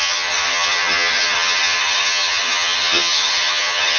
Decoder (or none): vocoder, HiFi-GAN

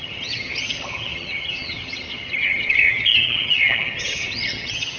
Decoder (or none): vocoder, HiFi-GAN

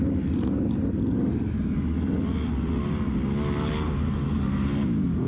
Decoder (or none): none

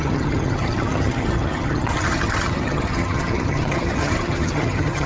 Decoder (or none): vocoder, HiFi-GAN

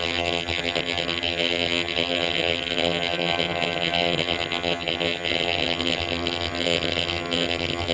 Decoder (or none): vocoder, HiFi-GAN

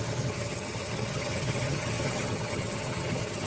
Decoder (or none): vocoder, HiFi-GAN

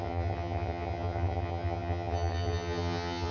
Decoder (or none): vocoder, HiFi-GAN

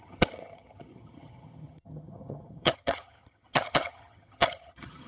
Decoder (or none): vocoder, HiFi-GAN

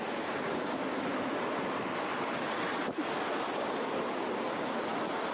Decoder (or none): none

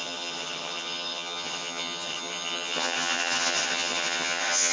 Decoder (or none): vocoder, HiFi-GAN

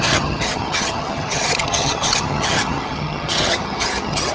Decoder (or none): vocoder, HiFi-GAN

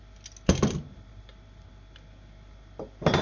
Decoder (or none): none